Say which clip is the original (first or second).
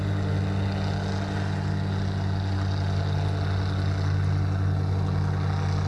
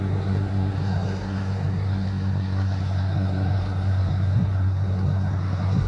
first